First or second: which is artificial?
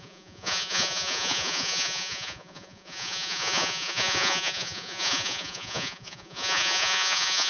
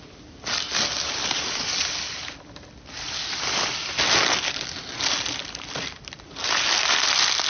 first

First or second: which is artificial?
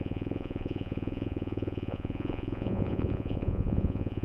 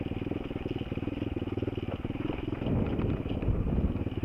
first